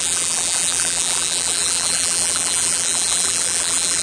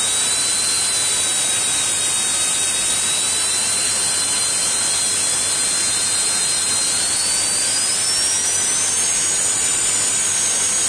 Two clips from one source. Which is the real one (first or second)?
second